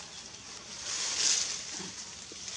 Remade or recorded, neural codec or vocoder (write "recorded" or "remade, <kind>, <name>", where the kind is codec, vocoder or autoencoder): recorded